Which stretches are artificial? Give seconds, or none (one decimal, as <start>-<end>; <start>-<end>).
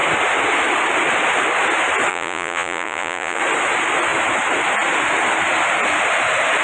2.1-3.4